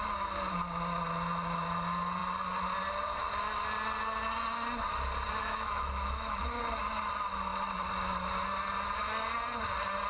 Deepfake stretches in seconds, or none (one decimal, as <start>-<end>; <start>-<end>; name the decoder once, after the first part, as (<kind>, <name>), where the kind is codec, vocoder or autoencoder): 5.4-6.6 (autoencoder, DAC-VAE)